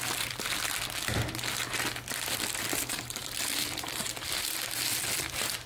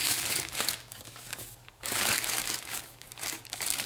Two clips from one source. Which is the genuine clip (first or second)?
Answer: first